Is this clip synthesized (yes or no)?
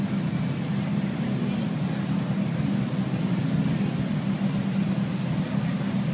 no